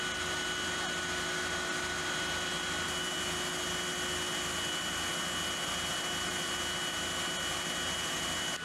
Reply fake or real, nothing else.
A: real